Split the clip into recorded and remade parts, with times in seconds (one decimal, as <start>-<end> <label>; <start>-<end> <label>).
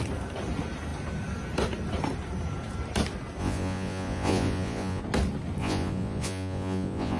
0.0-3.4 recorded; 3.4-5.0 remade; 5.0-5.6 recorded; 5.6-7.2 remade